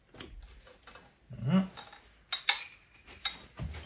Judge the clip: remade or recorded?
recorded